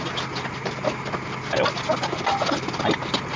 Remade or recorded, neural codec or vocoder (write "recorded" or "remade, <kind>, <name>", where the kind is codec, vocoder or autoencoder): recorded